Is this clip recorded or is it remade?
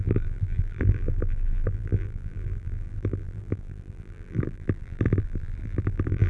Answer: remade